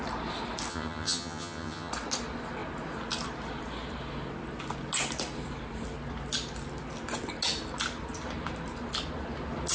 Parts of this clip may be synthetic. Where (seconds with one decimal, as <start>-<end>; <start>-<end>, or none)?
0.7-1.9